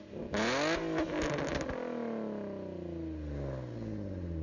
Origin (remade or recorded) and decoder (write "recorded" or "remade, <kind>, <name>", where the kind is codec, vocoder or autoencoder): recorded